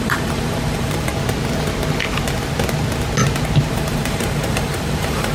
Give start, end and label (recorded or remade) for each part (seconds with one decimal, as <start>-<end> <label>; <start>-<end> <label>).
0.0-1.1 remade; 1.1-3.7 recorded; 3.7-5.3 remade